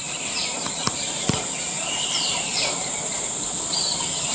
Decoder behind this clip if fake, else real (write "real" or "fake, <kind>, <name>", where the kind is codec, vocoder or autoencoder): fake, vocoder, BigVGAN v2